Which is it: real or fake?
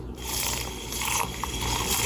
fake